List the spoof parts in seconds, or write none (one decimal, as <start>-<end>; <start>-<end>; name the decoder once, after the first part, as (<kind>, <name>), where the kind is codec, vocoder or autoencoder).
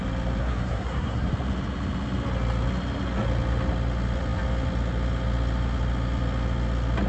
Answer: 0.4-1.3 (codec, SNAC)